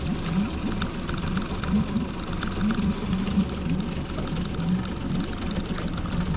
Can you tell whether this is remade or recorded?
recorded